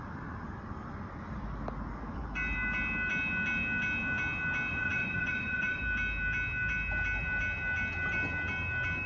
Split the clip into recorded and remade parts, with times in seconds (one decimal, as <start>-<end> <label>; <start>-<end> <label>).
0.0-4.7 recorded; 4.7-5.8 remade; 5.8-9.1 recorded